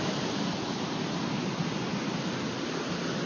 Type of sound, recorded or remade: recorded